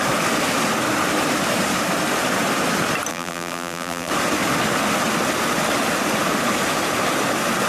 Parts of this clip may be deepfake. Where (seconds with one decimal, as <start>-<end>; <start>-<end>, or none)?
3.1-4.1